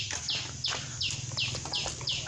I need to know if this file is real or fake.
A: real